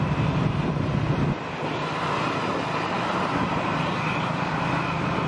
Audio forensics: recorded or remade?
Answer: recorded